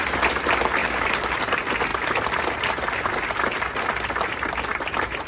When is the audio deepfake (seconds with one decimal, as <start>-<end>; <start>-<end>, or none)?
0.8-1.3